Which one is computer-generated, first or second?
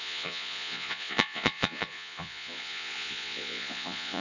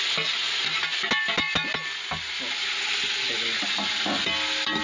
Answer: first